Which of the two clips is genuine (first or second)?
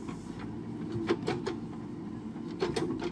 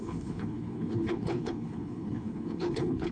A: first